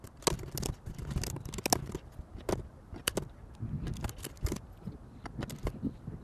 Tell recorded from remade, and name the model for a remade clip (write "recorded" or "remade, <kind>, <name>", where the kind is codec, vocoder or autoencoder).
recorded